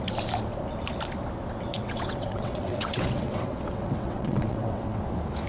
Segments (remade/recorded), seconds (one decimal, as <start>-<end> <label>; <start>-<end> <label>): 0.0-1.7 recorded; 1.7-5.0 remade; 5.0-5.5 recorded